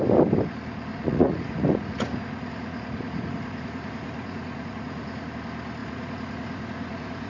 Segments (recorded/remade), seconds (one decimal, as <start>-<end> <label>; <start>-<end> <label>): 0.0-0.9 recorded; 0.9-5.3 remade; 5.3-5.8 recorded; 5.8-7.3 remade